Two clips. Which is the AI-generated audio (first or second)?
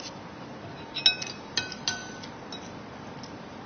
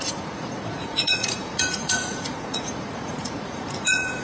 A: second